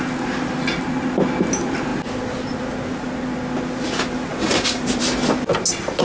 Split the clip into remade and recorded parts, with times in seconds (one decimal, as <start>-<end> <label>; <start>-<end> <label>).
0.0-4.3 recorded; 4.3-4.8 remade; 4.8-6.0 recorded